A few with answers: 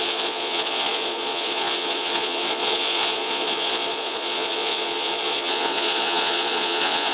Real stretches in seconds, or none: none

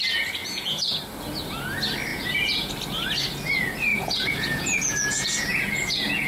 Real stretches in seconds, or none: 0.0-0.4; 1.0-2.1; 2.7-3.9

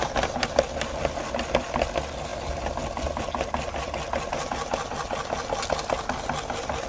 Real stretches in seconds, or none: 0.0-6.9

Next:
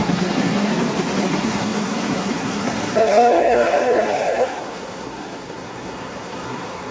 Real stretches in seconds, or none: 0.7-1.2